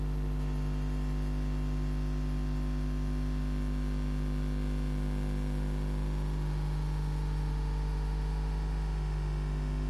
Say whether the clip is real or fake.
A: fake